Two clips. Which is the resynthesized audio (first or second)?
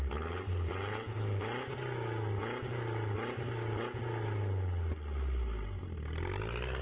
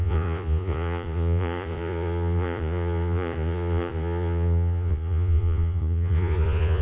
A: second